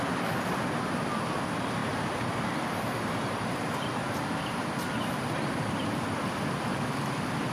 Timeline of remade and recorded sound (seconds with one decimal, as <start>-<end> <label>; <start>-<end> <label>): 0.0-1.8 recorded; 1.8-6.0 remade; 6.0-7.5 recorded